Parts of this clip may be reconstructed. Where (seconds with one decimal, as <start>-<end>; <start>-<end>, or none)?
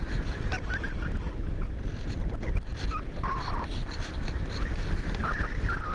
none